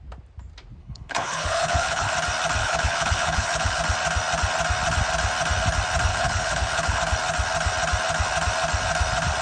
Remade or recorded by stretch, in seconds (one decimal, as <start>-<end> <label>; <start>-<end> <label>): 0.0-0.8 recorded; 0.8-2.1 remade; 2.1-2.6 recorded; 2.6-3.8 remade; 3.8-6.1 recorded; 6.1-7.0 remade; 7.0-9.4 recorded